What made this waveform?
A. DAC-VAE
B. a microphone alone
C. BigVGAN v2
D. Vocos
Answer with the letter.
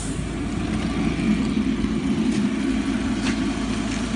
B